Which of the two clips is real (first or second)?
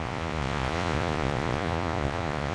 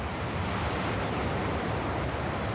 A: second